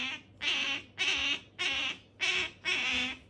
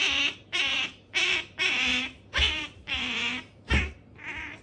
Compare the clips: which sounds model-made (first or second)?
second